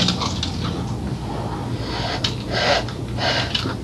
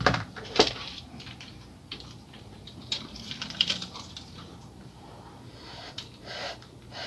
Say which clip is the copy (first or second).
second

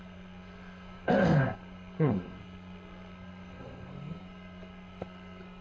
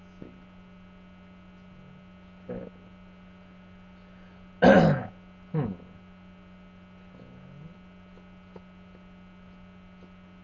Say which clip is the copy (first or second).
first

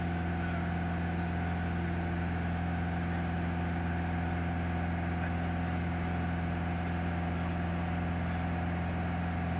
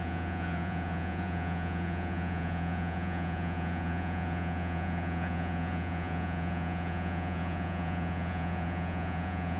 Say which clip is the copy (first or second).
second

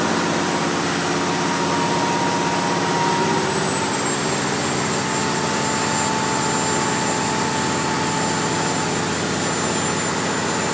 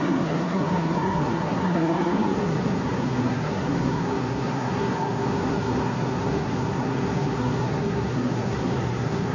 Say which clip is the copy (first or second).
second